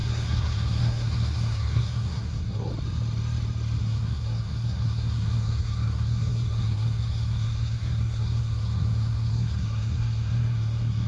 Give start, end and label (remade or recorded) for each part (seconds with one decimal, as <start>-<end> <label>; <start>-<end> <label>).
0.0-2.7 remade; 2.7-3.8 recorded; 3.8-11.1 remade